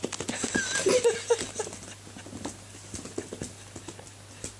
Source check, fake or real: real